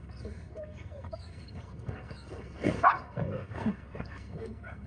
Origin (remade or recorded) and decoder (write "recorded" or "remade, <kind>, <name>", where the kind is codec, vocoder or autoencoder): remade, codec, SNAC